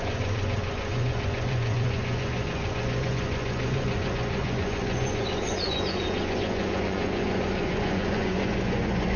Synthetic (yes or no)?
yes